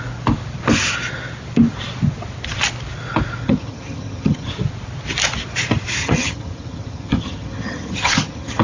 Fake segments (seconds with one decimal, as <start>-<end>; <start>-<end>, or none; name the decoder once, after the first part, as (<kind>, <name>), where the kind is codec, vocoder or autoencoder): 3.4-4.5 (vocoder, HiFi-GAN); 6.0-8.6